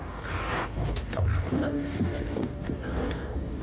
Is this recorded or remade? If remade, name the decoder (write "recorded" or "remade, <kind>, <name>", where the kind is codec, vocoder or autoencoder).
remade, codec, DAC